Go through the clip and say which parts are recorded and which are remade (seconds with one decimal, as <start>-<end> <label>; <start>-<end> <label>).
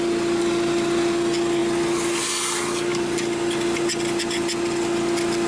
0.0-5.5 recorded